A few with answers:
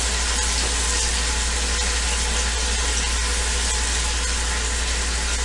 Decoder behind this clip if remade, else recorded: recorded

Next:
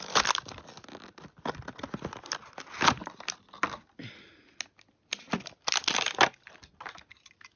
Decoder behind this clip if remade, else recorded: recorded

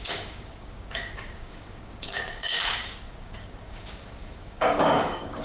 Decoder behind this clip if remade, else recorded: remade, codec, DAC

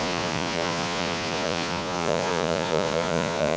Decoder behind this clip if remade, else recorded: remade, vocoder, Vocos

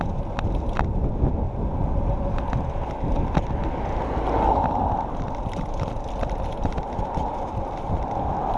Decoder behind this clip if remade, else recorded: recorded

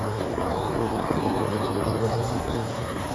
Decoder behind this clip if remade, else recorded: remade, codec, SNAC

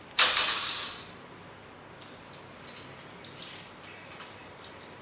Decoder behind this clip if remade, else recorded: recorded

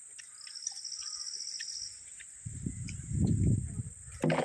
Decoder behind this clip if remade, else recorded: recorded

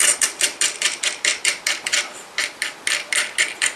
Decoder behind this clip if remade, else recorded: recorded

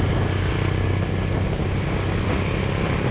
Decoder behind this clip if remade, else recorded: recorded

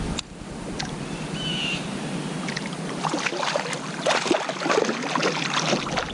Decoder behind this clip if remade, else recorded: recorded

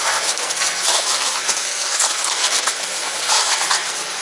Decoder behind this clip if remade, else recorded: remade, codec, SNAC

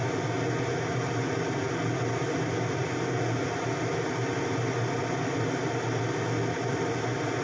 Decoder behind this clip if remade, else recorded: recorded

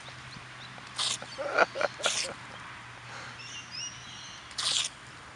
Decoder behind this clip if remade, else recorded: recorded